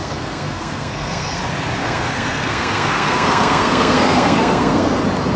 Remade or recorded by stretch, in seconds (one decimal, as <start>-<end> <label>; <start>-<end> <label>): 0.0-1.4 remade; 1.4-1.8 recorded; 1.8-5.0 remade; 5.0-5.4 recorded